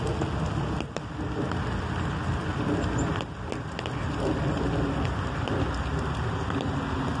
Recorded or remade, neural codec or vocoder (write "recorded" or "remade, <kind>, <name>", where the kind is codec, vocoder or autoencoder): recorded